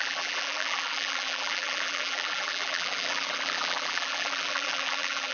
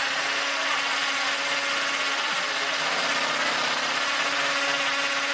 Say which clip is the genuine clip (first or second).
second